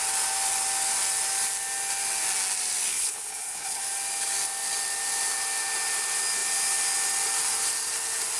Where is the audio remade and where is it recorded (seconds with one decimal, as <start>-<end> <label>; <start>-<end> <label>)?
0.0-2.9 recorded; 2.9-3.8 remade; 3.8-8.4 recorded